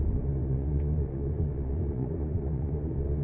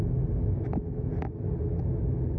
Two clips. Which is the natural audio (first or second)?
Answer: second